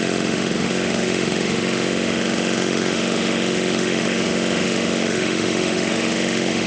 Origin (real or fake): fake